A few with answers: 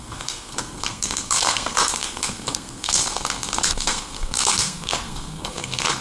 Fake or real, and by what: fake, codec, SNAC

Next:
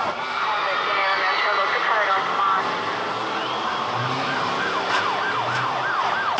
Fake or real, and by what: real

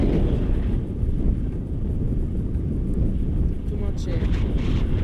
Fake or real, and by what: real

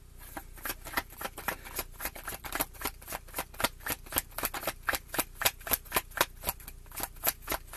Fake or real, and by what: real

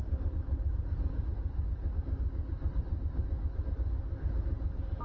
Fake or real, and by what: real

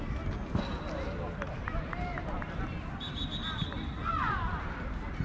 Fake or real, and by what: real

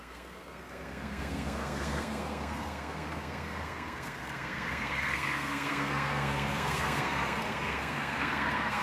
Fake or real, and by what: fake, codec, SNAC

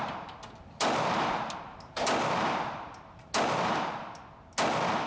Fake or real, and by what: real